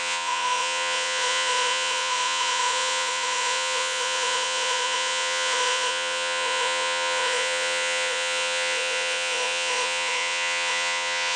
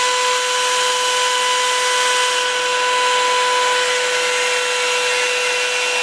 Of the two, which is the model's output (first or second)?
first